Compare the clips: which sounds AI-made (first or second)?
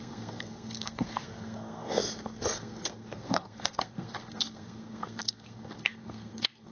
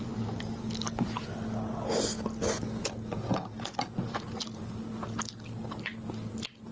first